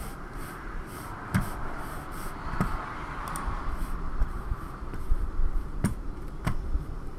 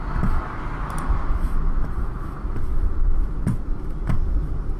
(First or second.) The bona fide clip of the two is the second